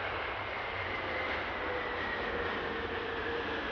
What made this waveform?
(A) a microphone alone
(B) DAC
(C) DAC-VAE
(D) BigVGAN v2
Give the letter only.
A